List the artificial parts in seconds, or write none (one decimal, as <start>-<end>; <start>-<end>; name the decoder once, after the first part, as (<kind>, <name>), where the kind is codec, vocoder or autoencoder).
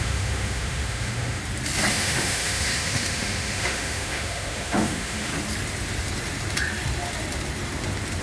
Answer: 0.0-1.4 (autoencoder, DAC-VAE); 1.9-5.3